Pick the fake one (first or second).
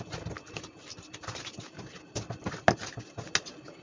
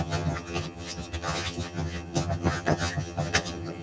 second